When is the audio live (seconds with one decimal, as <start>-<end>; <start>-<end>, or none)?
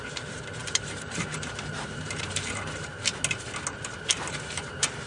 2.9-4.3